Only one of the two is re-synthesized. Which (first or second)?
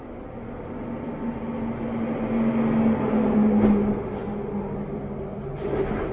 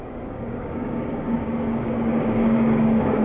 second